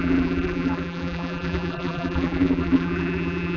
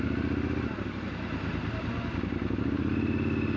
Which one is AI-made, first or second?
first